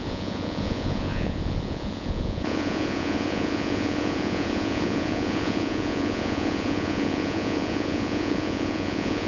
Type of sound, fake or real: fake